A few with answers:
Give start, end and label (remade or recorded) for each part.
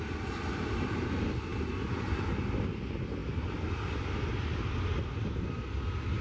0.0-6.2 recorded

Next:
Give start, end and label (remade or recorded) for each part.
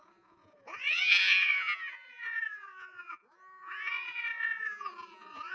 0.0-5.5 remade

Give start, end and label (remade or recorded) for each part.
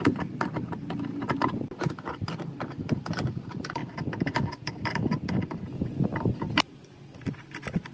0.0-7.9 recorded